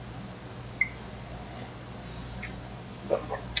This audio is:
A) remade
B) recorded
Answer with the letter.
B